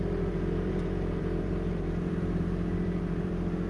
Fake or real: fake